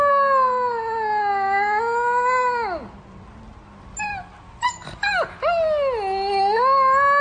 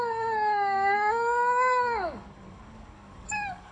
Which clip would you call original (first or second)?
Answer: first